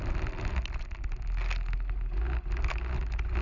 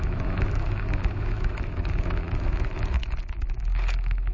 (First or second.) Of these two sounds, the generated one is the second